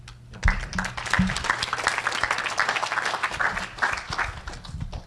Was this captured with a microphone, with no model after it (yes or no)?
yes